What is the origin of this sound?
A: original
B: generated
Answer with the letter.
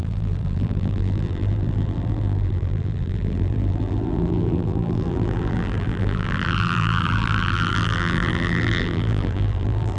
B